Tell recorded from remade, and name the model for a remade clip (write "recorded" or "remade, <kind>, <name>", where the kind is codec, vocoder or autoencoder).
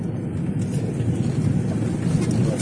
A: recorded